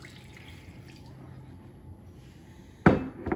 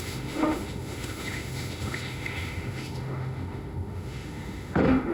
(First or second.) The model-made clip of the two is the second